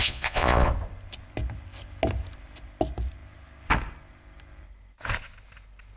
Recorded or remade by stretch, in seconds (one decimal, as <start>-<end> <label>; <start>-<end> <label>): 0.0-0.7 remade; 0.7-6.0 recorded